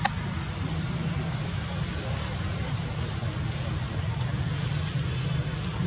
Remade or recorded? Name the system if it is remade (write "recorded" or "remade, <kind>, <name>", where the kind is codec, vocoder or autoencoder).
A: recorded